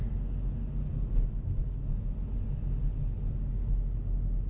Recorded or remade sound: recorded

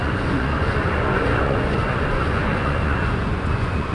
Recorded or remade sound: remade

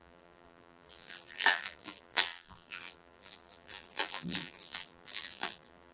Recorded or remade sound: remade